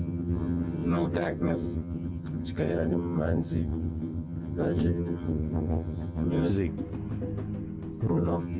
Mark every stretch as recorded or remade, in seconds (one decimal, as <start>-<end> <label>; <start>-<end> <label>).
0.0-6.5 remade; 6.5-8.1 recorded; 8.1-8.6 remade